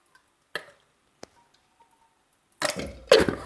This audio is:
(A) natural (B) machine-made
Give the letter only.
A